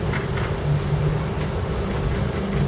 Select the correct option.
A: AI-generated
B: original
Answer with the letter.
B